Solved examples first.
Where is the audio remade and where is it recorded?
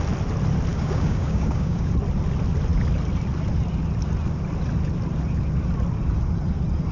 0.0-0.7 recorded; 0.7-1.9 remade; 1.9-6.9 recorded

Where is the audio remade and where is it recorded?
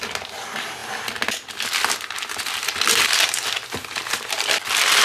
0.0-5.0 recorded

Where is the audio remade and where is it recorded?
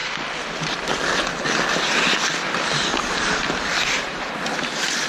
0.0-5.1 recorded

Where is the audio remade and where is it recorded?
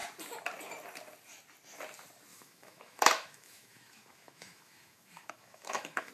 0.0-2.3 recorded; 2.3-6.1 remade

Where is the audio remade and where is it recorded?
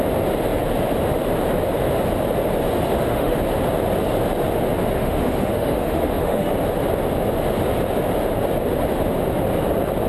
0.0-2.9 recorded; 2.9-3.4 remade; 3.4-5.0 recorded; 5.0-6.5 remade; 6.5-10.1 recorded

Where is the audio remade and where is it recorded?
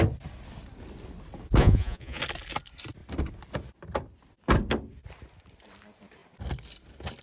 0.0-1.6 recorded; 1.6-2.2 remade; 2.2-7.2 recorded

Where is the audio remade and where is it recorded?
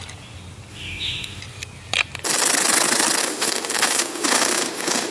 0.0-0.7 recorded; 0.7-1.4 remade; 1.4-3.2 recorded; 3.2-5.1 remade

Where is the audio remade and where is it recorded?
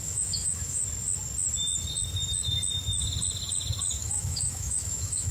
0.0-0.8 remade; 0.8-4.0 recorded; 4.0-5.3 remade